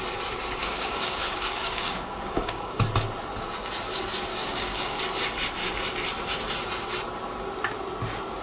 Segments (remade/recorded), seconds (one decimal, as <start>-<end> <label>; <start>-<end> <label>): 0.0-0.6 recorded; 0.6-2.8 remade; 2.8-4.3 recorded; 4.3-5.0 remade; 5.0-8.4 recorded